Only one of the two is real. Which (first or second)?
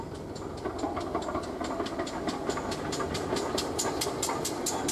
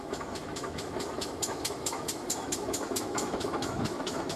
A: first